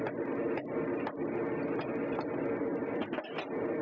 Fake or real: real